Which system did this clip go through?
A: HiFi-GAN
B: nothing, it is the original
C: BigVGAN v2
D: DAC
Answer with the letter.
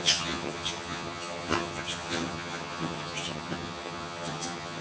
A